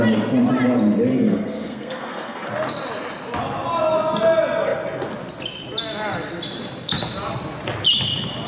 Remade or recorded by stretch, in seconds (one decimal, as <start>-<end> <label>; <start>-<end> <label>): 0.0-1.1 recorded; 1.1-2.5 remade; 2.5-8.5 recorded